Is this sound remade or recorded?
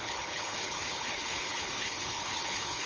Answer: remade